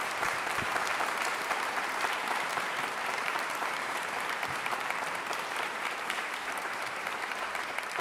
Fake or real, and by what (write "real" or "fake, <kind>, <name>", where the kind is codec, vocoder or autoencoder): fake, vocoder, BigVGAN v2